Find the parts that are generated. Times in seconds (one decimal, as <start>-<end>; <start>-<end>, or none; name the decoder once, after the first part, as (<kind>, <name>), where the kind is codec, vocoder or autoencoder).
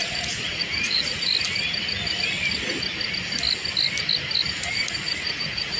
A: 0.0-1.3 (vocoder, Vocos); 4.7-5.8